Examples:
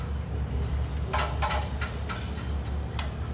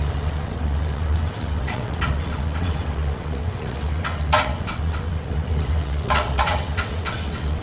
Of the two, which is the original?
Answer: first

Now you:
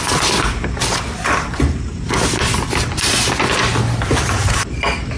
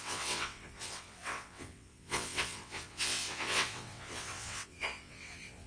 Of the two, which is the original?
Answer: first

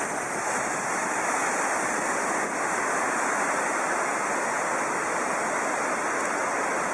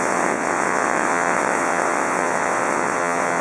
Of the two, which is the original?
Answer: first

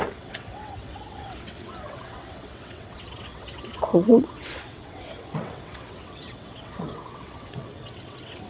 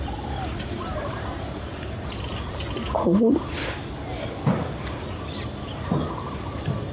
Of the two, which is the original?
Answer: second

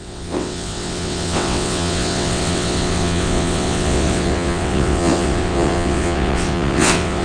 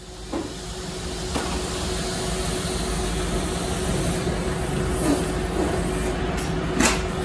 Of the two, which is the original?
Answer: second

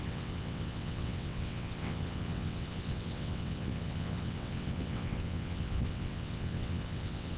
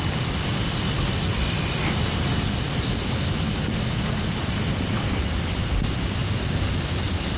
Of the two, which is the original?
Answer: second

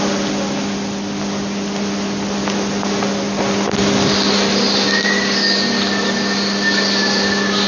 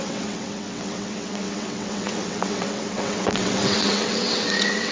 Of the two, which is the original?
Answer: first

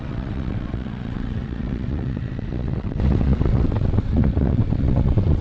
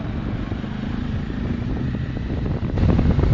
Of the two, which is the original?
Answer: second